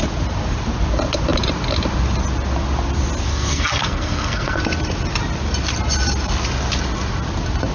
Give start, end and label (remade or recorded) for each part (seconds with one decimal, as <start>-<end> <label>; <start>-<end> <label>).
0.0-3.3 recorded; 3.3-4.6 remade; 4.6-7.7 recorded